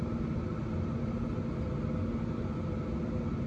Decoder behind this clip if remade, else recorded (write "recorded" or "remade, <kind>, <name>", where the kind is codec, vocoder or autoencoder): recorded